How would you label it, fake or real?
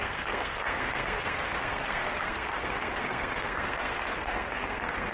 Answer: fake